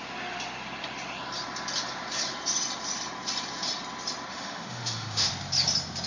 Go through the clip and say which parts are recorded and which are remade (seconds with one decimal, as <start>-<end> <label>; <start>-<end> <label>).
0.0-4.3 recorded; 4.3-5.3 remade; 5.3-6.1 recorded